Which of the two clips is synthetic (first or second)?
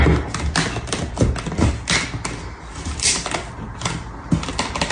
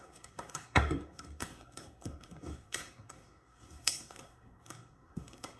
second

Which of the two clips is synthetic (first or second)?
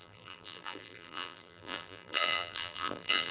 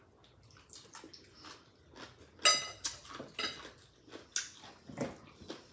first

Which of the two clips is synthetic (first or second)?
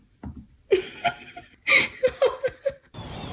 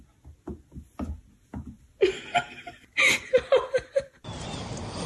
first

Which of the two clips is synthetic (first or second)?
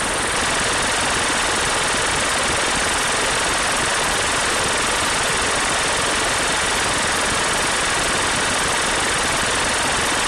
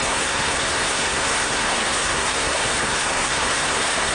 second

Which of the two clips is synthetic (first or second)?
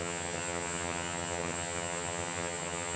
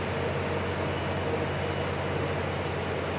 first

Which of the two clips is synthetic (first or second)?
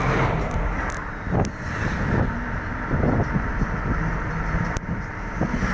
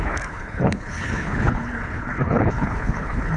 second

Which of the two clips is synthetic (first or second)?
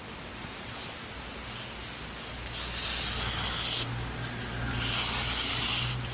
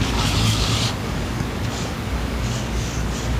second